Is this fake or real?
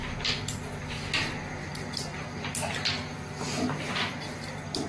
real